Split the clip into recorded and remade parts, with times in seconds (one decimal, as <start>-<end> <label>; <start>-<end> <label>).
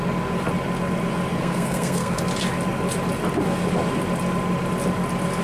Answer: 0.0-1.4 recorded; 1.4-2.2 remade; 2.2-5.4 recorded